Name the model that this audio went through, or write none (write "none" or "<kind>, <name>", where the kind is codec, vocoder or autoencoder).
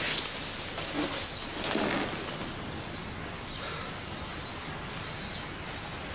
none